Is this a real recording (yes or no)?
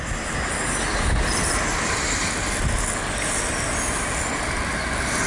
yes